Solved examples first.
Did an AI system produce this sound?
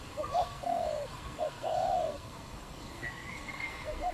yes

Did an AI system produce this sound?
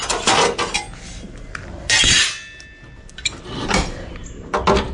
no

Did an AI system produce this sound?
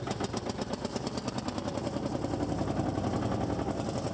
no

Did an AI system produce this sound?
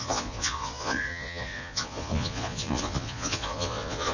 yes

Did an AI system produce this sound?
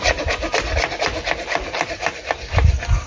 no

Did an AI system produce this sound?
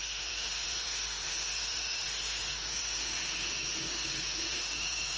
yes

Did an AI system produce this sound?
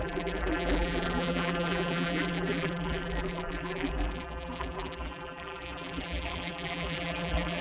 yes